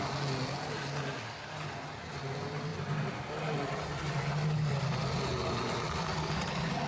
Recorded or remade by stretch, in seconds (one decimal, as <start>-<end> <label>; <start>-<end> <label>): 0.0-6.9 recorded